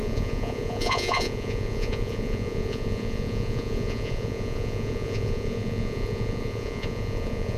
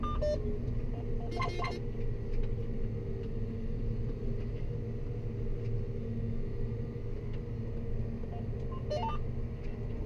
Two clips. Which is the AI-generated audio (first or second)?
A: first